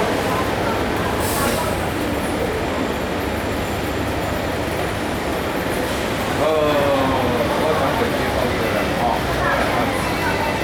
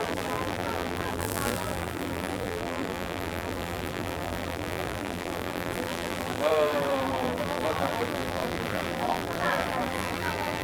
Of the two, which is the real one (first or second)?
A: first